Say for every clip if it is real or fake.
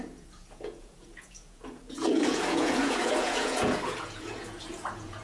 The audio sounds fake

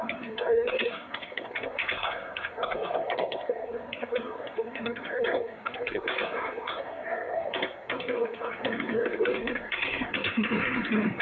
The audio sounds fake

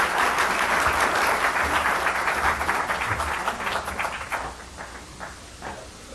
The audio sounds real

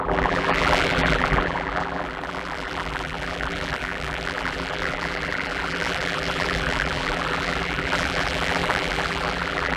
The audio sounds fake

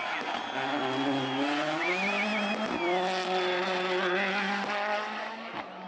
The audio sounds real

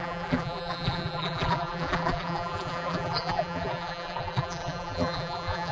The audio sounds fake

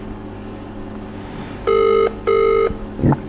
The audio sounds real